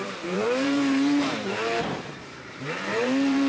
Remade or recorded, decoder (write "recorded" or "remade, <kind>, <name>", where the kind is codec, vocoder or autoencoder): remade, vocoder, BigVGAN v2